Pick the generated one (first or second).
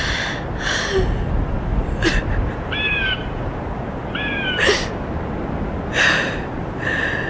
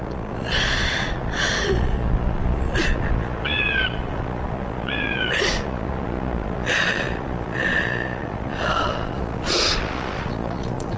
second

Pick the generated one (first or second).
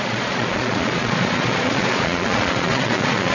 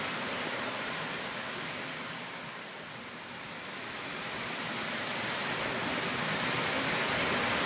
first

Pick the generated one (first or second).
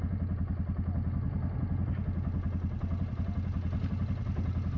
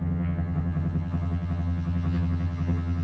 second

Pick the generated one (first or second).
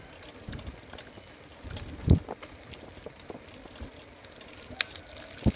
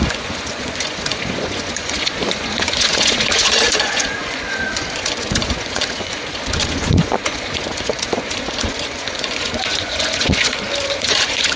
second